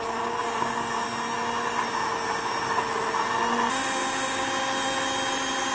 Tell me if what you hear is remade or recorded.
recorded